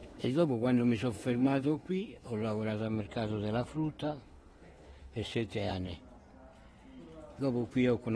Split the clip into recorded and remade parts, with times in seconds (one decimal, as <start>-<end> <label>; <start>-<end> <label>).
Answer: 0.0-3.0 remade; 3.0-4.1 recorded; 4.1-5.7 remade; 5.7-8.2 recorded